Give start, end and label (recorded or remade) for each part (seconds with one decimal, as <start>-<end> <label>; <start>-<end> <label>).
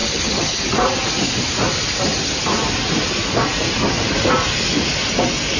0.0-0.6 remade; 0.6-5.6 recorded